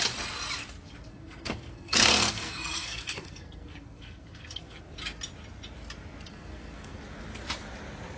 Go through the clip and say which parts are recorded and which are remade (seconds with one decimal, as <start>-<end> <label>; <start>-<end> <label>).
0.0-1.1 recorded; 1.1-4.8 remade; 4.8-6.3 recorded; 6.3-7.0 remade; 7.0-8.2 recorded